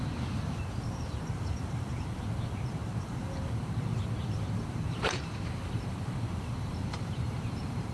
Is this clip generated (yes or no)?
yes